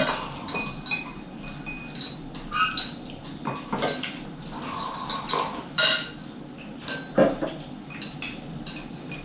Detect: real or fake real